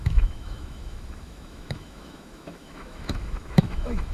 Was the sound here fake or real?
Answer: fake